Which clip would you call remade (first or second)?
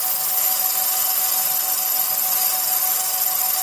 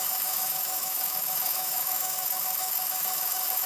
second